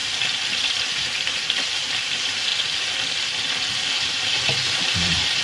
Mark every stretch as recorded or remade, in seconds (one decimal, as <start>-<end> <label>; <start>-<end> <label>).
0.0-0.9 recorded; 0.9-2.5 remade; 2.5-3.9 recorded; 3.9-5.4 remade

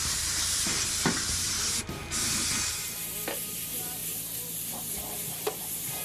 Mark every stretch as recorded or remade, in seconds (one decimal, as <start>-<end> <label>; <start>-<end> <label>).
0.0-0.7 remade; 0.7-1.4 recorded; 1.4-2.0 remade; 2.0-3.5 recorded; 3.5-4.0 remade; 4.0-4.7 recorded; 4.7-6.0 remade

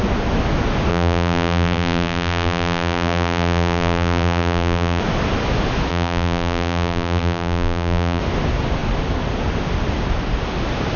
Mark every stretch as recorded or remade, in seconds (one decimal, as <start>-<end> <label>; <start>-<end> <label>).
0.0-0.9 recorded; 0.9-5.0 remade; 5.0-5.9 recorded; 5.9-8.2 remade; 8.2-11.0 recorded

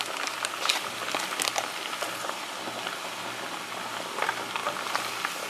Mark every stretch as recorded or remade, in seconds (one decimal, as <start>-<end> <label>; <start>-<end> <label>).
0.0-5.5 recorded

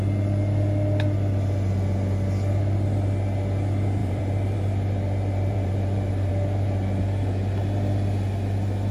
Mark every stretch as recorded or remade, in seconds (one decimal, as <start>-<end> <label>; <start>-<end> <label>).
0.0-4.0 recorded; 4.0-6.3 remade; 6.3-8.9 recorded

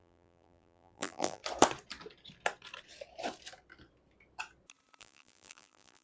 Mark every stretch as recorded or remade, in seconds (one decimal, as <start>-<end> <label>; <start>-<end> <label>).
0.0-1.4 remade; 1.4-5.0 recorded; 5.0-6.0 remade

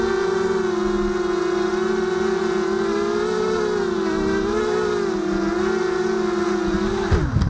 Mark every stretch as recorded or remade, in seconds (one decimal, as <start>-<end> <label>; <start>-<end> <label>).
0.0-7.5 recorded

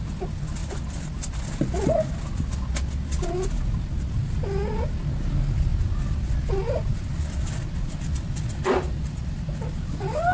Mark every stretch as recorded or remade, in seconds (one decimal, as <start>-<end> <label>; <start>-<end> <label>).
0.0-0.6 recorded; 0.6-1.1 remade; 1.1-5.7 recorded; 5.7-9.8 remade; 9.8-10.3 recorded